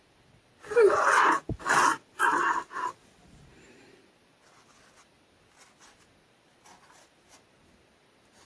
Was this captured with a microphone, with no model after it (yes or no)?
yes